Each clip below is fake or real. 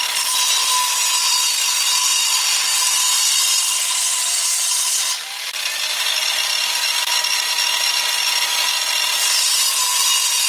real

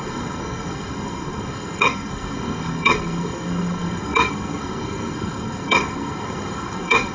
fake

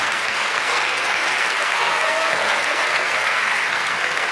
fake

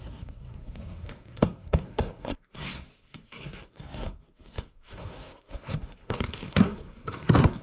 fake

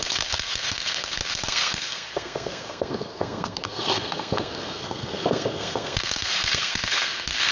fake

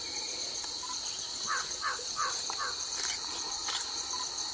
real